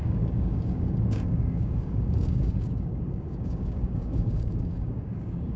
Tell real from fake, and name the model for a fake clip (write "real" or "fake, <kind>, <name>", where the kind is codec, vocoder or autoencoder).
fake, codec, DAC